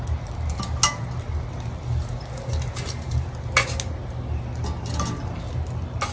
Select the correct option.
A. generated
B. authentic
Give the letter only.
B